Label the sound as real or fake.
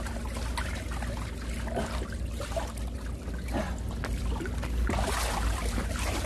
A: real